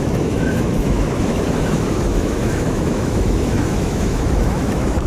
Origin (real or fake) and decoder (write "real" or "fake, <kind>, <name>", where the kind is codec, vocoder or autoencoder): fake, autoencoder, DAC-VAE